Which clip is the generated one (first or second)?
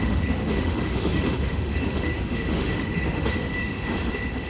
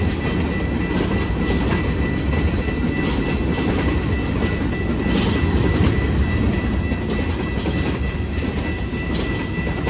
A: first